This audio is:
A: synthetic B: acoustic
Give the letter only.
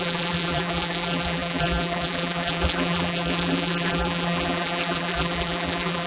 A